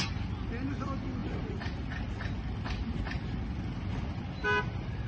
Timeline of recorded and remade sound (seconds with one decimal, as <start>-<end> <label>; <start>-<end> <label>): 0.0-5.1 recorded